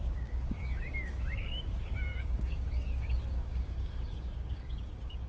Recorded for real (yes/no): no